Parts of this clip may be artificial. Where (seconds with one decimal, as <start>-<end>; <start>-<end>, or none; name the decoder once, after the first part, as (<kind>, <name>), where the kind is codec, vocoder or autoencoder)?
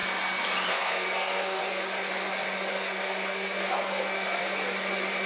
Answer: 0.7-1.6 (codec, SNAC); 2.7-4.4